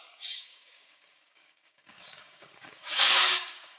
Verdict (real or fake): fake